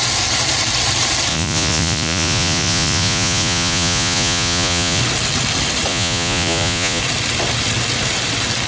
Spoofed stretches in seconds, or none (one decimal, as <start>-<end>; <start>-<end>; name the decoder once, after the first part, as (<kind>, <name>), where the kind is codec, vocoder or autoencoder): 1.3-5.0 (vocoder, Vocos); 5.9-7.0